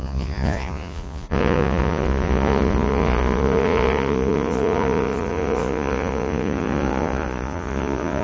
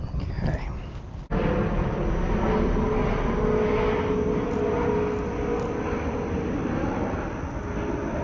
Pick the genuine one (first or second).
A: second